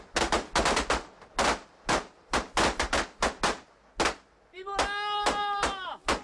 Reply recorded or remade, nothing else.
recorded